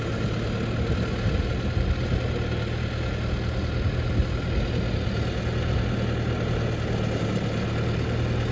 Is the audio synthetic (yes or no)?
no